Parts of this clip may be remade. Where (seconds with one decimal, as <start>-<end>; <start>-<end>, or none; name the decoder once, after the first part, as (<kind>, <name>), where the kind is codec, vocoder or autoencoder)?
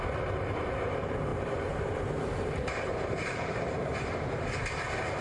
1.3-4.4 (vocoder, BigVGAN v2)